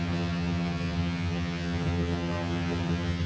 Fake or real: fake